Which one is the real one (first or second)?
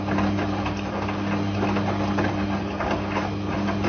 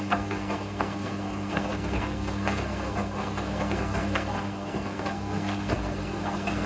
first